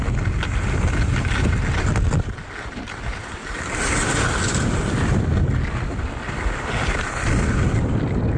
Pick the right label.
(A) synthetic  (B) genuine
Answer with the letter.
B